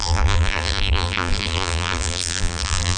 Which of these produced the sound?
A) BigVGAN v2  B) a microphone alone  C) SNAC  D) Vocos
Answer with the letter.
A